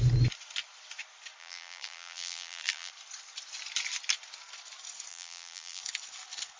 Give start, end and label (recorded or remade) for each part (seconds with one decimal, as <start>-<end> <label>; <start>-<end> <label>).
0.0-1.4 recorded; 1.4-2.9 remade; 2.9-5.1 recorded; 5.1-5.8 remade; 5.8-6.6 recorded